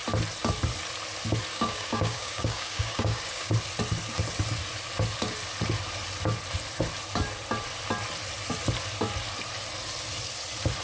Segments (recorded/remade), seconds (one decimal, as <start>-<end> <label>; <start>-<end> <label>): 0.0-1.5 recorded; 1.5-3.5 remade; 3.5-10.8 recorded